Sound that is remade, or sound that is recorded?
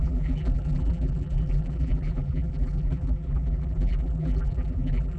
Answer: remade